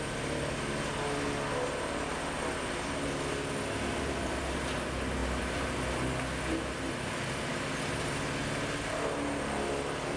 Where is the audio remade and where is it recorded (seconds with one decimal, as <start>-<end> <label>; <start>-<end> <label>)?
0.0-5.2 recorded; 5.2-7.4 remade; 7.4-10.2 recorded